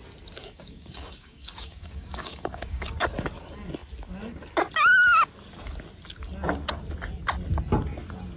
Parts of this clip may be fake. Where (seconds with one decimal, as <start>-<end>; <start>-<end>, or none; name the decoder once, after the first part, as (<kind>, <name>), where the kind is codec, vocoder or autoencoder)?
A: 0.4-2.9 (codec, DAC)